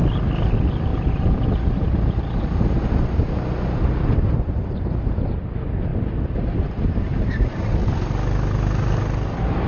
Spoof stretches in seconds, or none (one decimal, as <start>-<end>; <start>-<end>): none